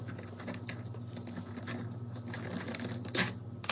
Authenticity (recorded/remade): recorded